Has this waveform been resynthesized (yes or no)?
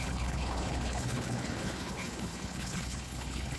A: yes